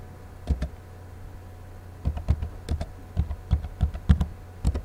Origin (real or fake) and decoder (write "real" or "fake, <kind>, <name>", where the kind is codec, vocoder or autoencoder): real